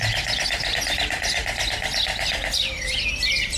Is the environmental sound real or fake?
real